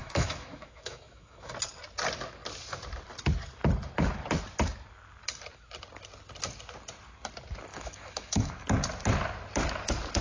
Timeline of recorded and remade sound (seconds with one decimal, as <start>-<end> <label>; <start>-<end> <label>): 0.0-1.5 remade; 1.5-7.7 recorded; 7.7-8.5 remade; 8.5-10.2 recorded